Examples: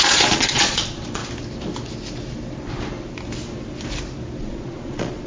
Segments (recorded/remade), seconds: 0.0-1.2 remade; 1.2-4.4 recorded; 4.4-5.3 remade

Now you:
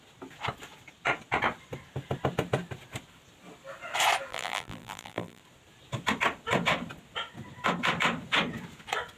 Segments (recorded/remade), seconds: 0.0-4.3 recorded; 4.3-5.4 remade; 5.4-9.2 recorded

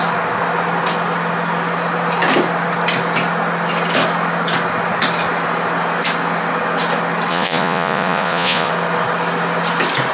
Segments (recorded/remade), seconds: 0.0-7.3 recorded; 7.3-8.7 remade; 8.7-10.1 recorded